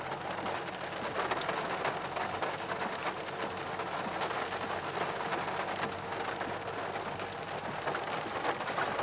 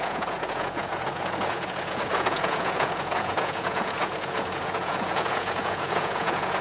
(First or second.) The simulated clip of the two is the second